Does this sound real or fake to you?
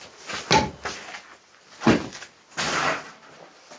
real